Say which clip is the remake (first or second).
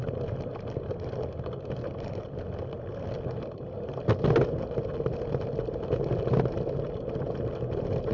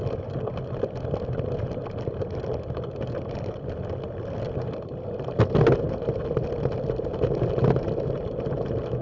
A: second